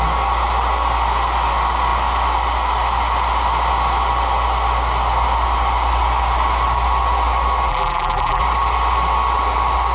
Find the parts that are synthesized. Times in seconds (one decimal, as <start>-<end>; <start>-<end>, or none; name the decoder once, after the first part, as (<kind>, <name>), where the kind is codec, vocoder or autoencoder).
7.7-8.4 (vocoder, BigVGAN v2)